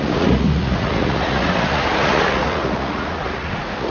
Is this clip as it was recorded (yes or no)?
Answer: no